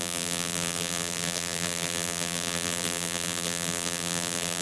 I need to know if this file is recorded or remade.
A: remade